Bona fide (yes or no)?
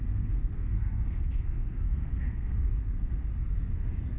no